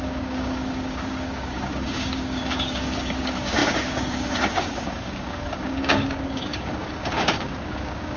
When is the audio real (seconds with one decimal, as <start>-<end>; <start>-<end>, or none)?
none